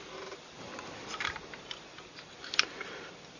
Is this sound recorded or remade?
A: recorded